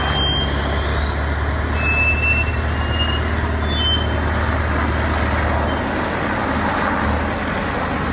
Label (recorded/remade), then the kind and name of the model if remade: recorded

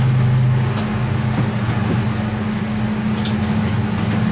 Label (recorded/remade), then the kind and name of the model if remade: recorded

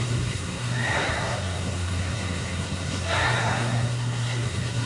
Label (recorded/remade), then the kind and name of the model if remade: remade, codec, SNAC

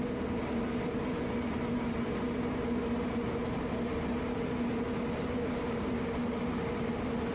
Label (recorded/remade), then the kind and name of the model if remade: recorded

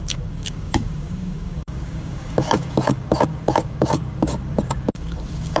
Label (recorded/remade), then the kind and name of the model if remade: remade, codec, DAC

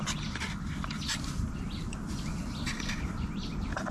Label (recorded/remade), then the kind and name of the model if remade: recorded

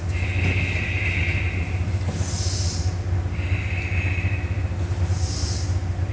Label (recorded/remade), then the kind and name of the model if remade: recorded